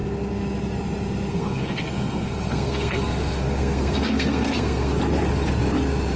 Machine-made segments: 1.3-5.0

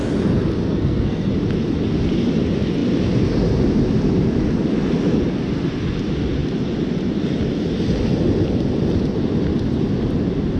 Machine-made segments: 0.6-1.3

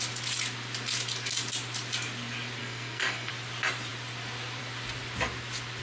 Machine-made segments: 2.6-3.3

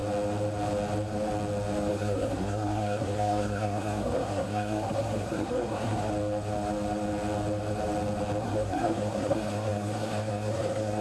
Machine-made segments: 1.9-6.1; 8.4-11.0

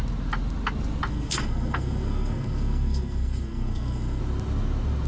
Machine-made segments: 1.1-4.2

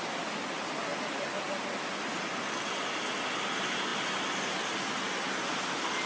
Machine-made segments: none